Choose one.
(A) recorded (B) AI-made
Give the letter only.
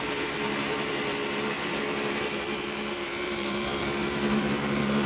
B